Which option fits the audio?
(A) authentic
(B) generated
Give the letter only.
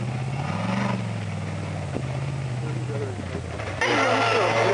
A